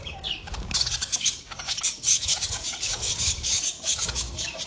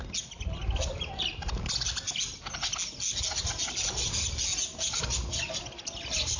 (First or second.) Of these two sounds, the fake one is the first